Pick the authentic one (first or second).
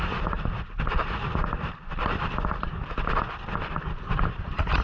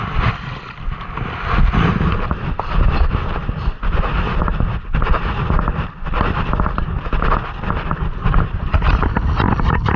second